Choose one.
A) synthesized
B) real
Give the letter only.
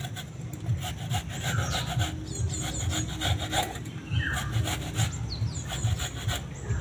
B